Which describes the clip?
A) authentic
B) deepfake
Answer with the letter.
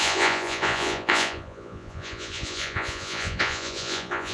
B